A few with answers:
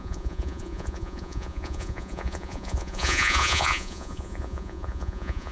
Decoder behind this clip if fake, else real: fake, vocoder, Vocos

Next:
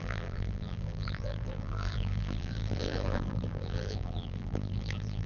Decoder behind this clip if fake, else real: fake, vocoder, BigVGAN v2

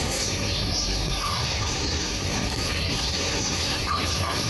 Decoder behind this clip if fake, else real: fake, codec, SNAC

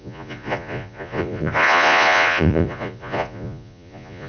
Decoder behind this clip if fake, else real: fake, vocoder, Vocos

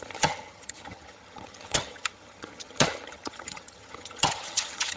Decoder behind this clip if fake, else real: fake, vocoder, HiFi-GAN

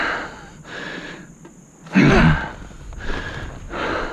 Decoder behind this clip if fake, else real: real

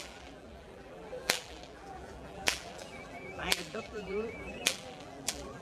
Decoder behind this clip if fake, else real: fake, vocoder, BigVGAN v2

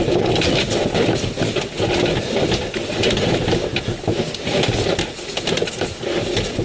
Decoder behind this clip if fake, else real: real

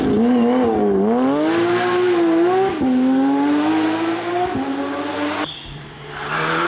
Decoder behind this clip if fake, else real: real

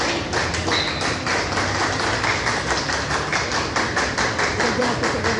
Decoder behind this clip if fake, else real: real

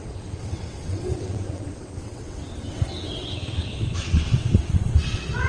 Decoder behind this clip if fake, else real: fake, vocoder, WaveNeXt